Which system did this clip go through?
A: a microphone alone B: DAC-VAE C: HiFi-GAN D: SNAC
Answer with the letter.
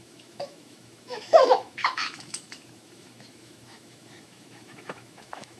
B